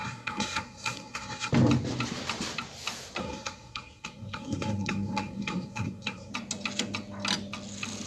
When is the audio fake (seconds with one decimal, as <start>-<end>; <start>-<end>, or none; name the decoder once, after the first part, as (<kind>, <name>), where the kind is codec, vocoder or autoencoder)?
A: 0.0-1.5 (codec, SNAC); 3.2-6.3